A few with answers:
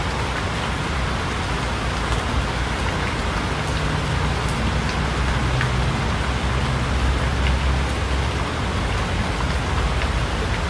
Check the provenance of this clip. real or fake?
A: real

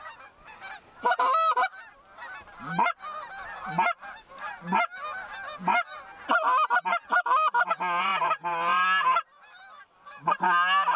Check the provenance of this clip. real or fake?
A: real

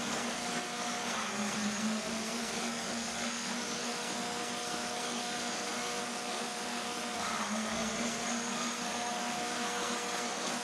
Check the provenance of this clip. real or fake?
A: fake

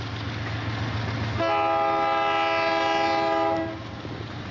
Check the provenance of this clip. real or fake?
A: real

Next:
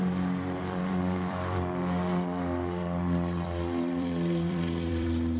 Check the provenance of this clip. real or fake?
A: fake